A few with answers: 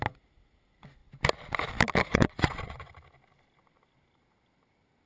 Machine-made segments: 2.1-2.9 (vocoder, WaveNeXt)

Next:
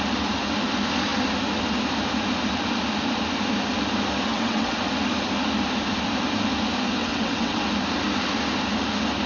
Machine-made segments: 4.3-4.9 (vocoder, WaveNeXt); 7.0-7.6

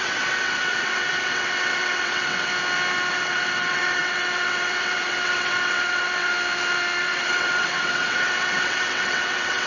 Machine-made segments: 0.0-2.5 (vocoder, WaveNeXt); 3.1-6.3; 7.0-9.7

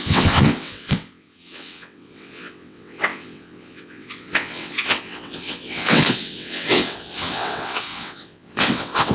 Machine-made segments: 0.0-9.1 (vocoder, WaveNeXt)